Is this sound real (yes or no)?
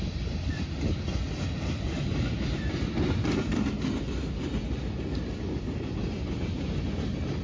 yes